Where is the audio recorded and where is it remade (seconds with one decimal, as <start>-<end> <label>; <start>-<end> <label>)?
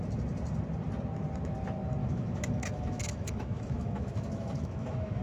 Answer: 0.0-2.0 recorded; 2.0-5.2 remade